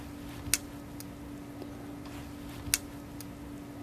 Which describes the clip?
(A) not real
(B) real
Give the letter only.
B